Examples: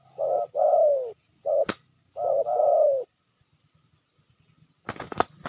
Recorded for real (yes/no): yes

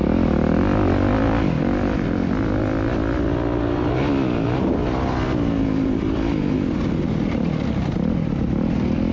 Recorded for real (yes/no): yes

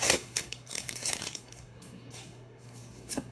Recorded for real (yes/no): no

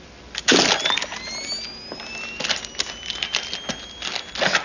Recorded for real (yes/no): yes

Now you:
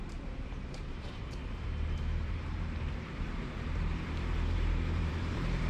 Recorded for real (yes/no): no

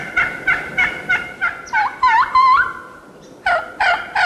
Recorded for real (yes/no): no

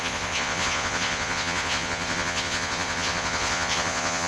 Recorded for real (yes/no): no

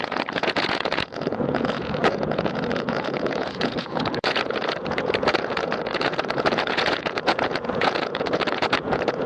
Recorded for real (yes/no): no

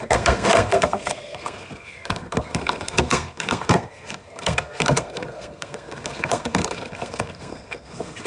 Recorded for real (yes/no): no